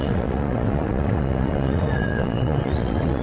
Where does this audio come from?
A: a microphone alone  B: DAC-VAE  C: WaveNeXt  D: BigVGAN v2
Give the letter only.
C